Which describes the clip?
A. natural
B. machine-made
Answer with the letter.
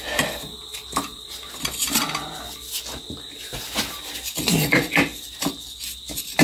A